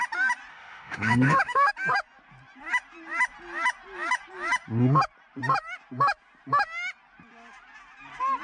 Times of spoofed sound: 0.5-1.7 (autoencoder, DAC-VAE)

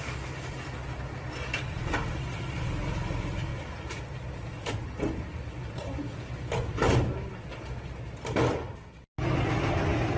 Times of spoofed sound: none

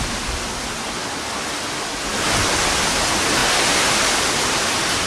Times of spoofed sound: 2.1-2.9 (vocoder, BigVGAN v2)

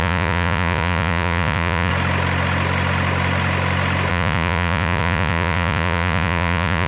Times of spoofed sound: 0.0-1.9 (vocoder, Vocos); 4.1-6.9